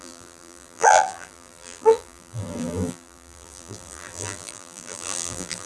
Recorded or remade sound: remade